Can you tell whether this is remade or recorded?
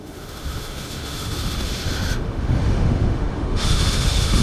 remade